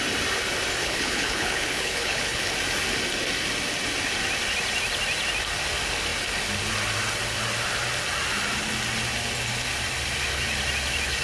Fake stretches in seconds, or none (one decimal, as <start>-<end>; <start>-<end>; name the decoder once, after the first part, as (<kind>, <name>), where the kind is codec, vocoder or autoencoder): 0.8-2.5 (codec, HILCodec)

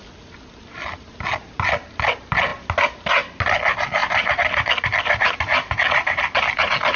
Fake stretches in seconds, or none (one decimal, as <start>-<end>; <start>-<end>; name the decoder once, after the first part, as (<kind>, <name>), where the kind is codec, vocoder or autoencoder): 4.0-4.7 (vocoder, BigVGAN v2); 5.5-6.4

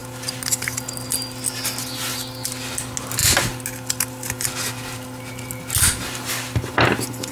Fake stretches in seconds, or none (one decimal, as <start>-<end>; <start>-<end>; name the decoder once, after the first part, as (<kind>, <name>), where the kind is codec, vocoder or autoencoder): none

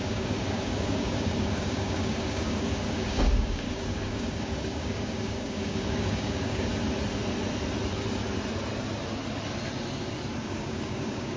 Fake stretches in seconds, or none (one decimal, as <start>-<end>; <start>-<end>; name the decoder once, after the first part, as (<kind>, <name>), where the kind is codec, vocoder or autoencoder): 0.0-6.7 (codec, DAC); 10.4-11.4